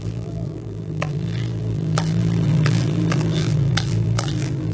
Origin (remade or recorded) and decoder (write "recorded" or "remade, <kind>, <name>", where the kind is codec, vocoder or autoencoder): remade, vocoder, BigVGAN v2